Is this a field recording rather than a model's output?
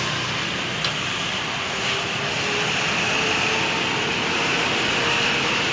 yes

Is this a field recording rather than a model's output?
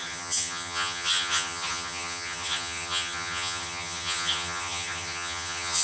no